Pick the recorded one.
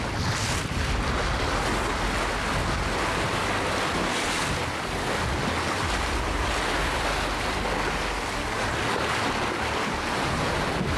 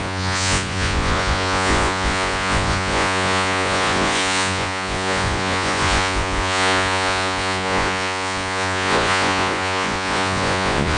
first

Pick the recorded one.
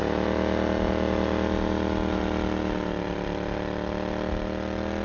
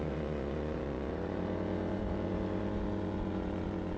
first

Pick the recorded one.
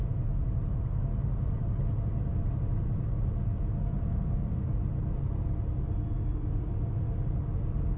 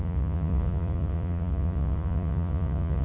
first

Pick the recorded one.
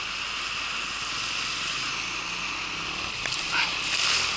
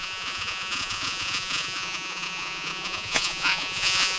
first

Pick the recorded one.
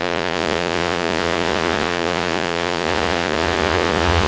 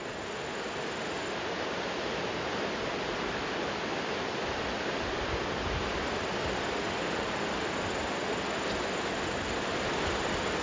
second